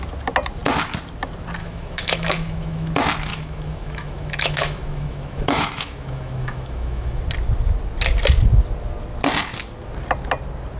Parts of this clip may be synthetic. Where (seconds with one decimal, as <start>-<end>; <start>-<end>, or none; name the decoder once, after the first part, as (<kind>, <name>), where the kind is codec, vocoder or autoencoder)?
1.6-2.9 (autoencoder, DAC-VAE); 3.3-7.2